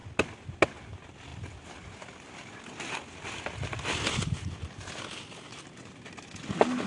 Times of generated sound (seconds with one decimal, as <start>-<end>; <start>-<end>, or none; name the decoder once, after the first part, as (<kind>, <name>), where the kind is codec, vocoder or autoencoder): none